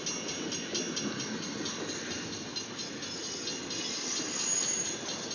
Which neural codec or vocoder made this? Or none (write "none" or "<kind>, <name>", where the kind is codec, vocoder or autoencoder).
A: none